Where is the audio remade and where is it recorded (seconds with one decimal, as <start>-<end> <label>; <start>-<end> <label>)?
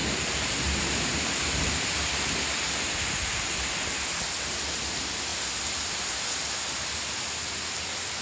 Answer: 0.0-8.2 recorded